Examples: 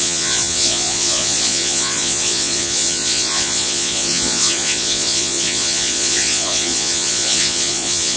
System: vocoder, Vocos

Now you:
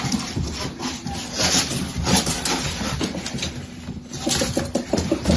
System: none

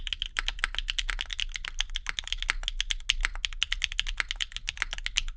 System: none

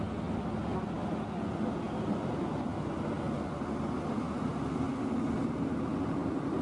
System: none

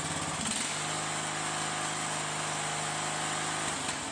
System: none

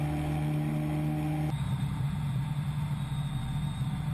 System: none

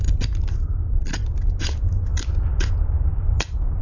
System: none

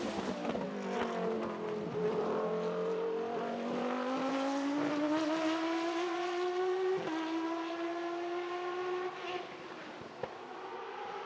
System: none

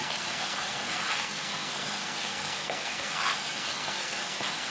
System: codec, SNAC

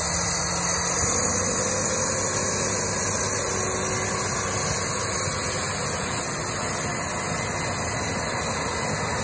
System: none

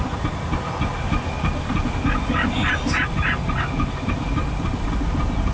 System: none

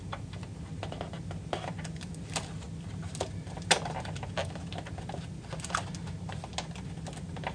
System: none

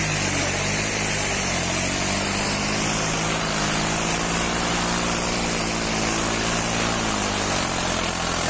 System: none